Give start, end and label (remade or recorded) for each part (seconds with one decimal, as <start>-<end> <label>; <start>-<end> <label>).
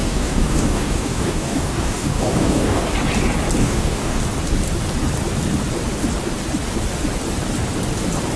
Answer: 0.0-2.8 remade; 2.8-3.6 recorded; 3.6-4.2 remade; 4.2-8.4 recorded